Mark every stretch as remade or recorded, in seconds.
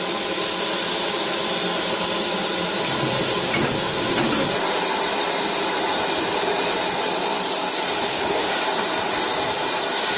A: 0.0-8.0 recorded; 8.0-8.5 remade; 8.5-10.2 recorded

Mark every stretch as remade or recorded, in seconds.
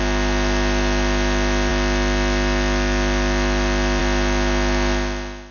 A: 0.0-5.5 recorded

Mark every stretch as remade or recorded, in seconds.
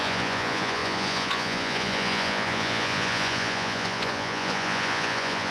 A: 0.0-5.5 remade